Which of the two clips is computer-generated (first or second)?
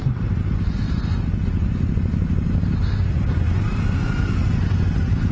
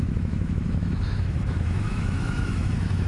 second